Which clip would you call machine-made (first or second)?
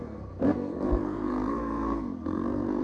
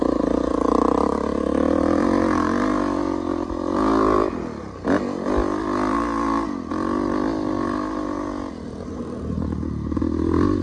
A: first